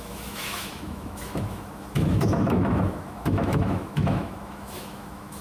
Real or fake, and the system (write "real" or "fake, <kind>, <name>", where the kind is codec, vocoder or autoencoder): fake, autoencoder, DAC-VAE